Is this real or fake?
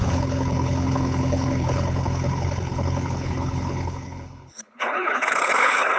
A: fake